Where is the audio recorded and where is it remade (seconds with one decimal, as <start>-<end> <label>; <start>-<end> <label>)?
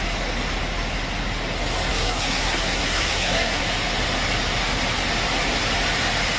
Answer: 0.0-1.9 recorded; 1.9-3.6 remade; 3.6-6.4 recorded